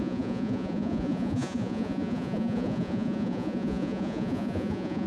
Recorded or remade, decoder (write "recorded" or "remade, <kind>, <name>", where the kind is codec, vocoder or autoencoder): remade, vocoder, Vocos